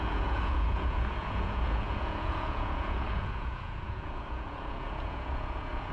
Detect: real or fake fake